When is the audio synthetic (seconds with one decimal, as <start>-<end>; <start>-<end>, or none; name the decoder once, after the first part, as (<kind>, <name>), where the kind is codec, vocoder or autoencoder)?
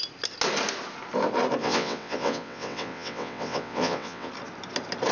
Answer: 1.6-4.3 (vocoder, WaveNeXt)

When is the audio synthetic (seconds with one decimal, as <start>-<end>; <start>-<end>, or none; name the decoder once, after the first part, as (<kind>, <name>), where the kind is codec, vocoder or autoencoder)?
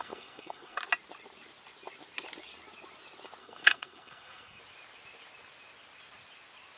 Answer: 0.0-0.8 (codec, SNAC); 3.4-4.6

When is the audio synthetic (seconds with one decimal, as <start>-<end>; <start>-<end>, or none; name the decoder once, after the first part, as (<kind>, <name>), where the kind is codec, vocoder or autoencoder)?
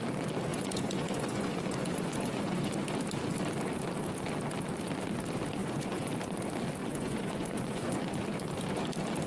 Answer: 0.5-2.7 (vocoder, Vocos); 5.6-6.1; 6.8-8.1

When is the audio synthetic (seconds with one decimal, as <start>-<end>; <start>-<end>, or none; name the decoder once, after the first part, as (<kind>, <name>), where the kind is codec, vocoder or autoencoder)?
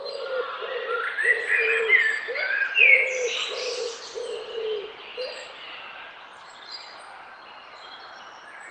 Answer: none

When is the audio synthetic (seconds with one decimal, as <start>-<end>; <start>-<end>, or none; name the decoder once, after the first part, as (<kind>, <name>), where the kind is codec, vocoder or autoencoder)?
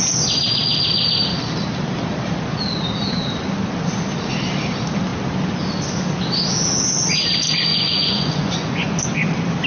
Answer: 7.7-9.0 (vocoder, Vocos)